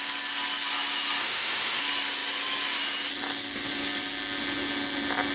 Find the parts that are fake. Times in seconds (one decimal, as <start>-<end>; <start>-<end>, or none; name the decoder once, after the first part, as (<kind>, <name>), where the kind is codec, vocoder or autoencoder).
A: 1.2-1.8 (autoencoder, DAC-VAE)